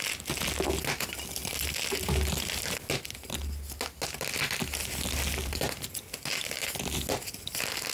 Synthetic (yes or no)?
no